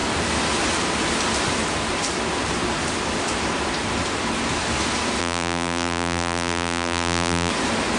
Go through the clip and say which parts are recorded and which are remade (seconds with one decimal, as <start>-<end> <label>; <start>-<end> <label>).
0.0-5.2 recorded; 5.2-7.5 remade; 7.5-8.0 recorded